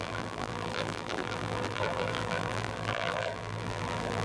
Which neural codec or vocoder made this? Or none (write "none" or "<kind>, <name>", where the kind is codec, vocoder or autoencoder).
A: vocoder, BigVGAN v2